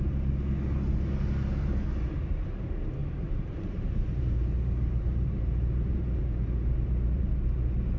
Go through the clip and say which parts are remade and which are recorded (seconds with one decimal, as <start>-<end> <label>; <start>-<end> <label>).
0.0-3.0 recorded; 3.0-7.2 remade; 7.2-8.0 recorded